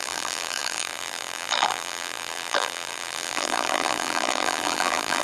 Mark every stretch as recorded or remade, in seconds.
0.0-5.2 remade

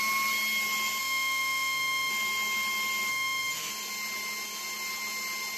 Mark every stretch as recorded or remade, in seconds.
0.0-1.0 recorded; 1.0-2.1 remade; 2.1-3.1 recorded; 3.1-3.7 remade; 3.7-5.6 recorded

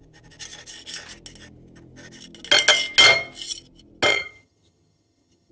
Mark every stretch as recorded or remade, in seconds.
0.0-4.1 recorded; 4.1-5.5 remade

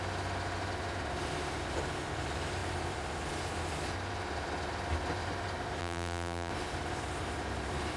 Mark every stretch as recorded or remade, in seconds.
0.0-5.8 recorded; 5.8-6.5 remade; 6.5-8.0 recorded

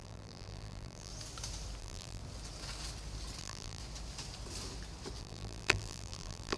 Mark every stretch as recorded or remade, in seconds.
0.0-1.1 remade; 1.1-1.8 recorded; 1.8-2.2 remade; 2.2-3.4 recorded; 3.4-3.8 remade; 3.8-5.2 recorded; 5.2-6.6 remade

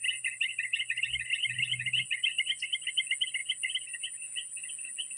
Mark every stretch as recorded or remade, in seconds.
0.0-3.4 recorded; 3.4-4.7 remade; 4.7-5.2 recorded

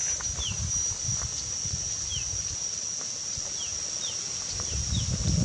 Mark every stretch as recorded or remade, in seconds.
0.0-5.4 recorded